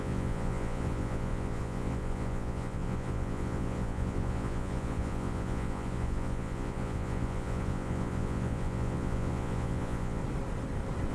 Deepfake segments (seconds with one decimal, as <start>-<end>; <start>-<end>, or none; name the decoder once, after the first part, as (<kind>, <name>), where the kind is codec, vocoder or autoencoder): 0.0-10.2 (vocoder, Vocos)